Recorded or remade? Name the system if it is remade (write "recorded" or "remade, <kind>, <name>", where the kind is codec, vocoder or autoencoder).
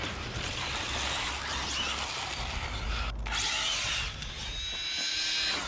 recorded